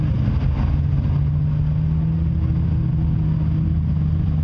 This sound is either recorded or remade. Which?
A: recorded